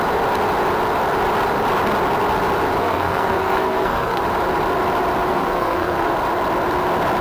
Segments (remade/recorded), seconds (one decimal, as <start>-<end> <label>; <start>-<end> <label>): 0.0-2.8 recorded; 2.8-4.2 remade; 4.2-5.3 recorded; 5.3-6.1 remade; 6.1-7.2 recorded